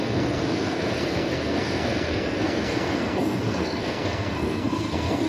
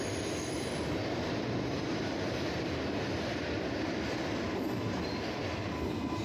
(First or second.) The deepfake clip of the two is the first